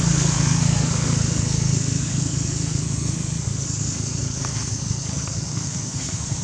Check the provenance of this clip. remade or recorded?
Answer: remade